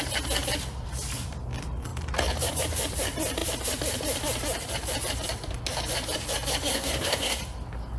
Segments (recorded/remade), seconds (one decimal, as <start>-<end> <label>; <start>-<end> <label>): 0.0-6.7 recorded; 6.7-7.4 remade; 7.4-8.0 recorded